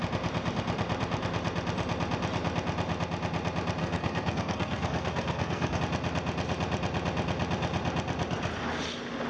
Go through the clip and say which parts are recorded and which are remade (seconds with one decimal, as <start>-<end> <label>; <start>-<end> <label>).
0.0-3.8 recorded; 3.8-5.8 remade; 5.8-9.3 recorded